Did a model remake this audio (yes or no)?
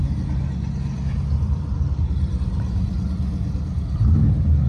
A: no